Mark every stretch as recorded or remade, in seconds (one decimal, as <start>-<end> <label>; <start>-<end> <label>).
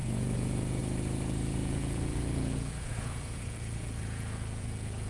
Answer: 0.0-0.8 remade; 0.8-1.6 recorded; 1.6-5.1 remade